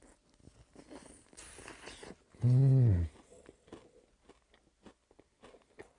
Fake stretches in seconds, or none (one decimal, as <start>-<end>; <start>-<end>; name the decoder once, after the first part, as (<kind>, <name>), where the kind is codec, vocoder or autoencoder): none